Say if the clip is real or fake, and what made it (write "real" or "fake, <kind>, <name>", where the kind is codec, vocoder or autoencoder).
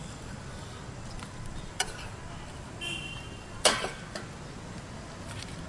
real